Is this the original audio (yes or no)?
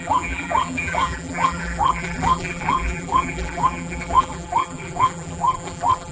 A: no